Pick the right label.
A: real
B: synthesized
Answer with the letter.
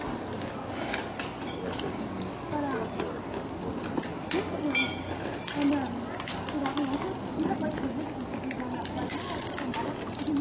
A